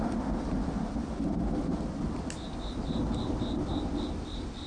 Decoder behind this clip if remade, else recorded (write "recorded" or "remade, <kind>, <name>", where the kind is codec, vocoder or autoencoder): recorded